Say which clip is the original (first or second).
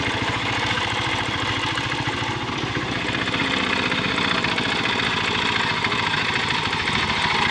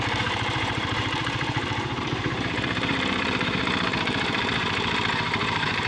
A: first